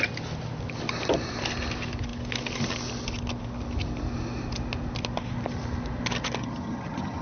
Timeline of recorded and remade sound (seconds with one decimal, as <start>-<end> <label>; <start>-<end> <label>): 0.0-6.4 recorded; 6.4-7.2 remade